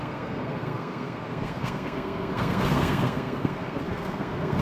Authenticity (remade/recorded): remade